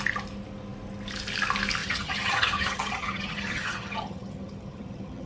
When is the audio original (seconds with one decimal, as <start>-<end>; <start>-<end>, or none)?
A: 0.0-1.8